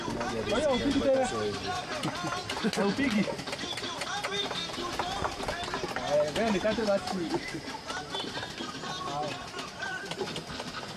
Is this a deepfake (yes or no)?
no